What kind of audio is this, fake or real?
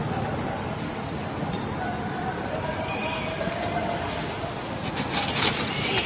real